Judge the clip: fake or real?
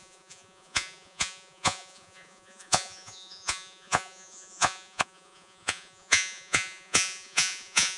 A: fake